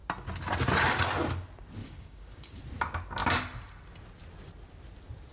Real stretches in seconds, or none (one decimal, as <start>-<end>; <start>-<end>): 0.0-1.8; 2.6-5.3